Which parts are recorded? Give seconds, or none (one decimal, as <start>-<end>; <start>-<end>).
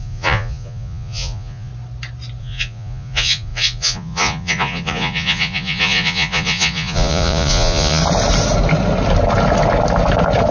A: 1.7-2.4; 8.0-10.5